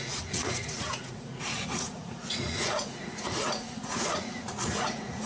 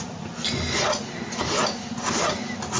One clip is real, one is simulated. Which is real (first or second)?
second